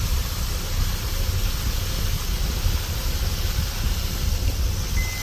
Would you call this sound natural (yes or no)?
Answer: yes